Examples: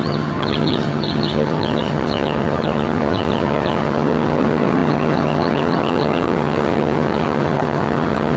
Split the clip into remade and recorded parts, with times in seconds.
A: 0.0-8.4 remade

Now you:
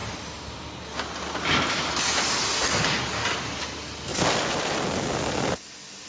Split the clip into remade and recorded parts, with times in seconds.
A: 0.0-6.1 recorded

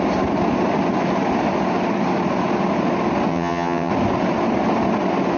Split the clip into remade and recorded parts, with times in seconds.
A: 0.0-3.3 recorded; 3.3-3.9 remade; 3.9-5.4 recorded

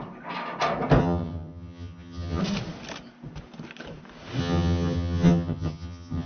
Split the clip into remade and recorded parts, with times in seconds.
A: 0.0-1.0 recorded; 1.0-2.4 remade; 2.4-4.4 recorded; 4.4-6.3 remade

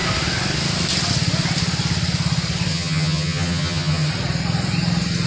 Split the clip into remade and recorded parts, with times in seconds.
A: 0.0-2.7 recorded; 2.7-4.1 remade; 4.1-5.3 recorded